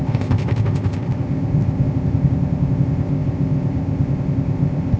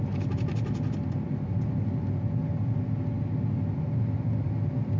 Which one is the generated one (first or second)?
first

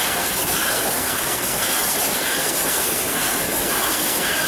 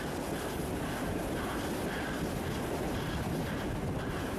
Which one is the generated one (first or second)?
first